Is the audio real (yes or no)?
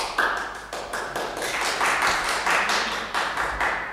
yes